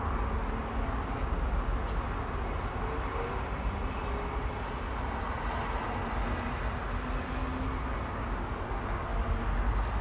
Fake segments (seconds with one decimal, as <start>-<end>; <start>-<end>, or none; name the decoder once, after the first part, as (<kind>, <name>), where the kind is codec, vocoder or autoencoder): none